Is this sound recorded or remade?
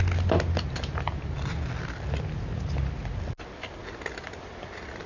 recorded